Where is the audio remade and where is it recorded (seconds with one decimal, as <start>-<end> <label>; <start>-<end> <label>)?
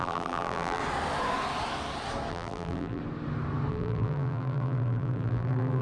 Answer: 0.0-0.8 remade; 0.8-2.3 recorded; 2.3-3.0 remade; 3.0-3.7 recorded; 3.7-5.8 remade